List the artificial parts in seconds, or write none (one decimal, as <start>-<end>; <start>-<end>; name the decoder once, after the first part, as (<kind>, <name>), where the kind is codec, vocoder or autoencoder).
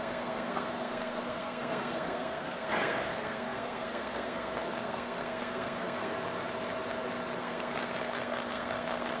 0.0-6.1 (codec, SNAC); 7.4-9.2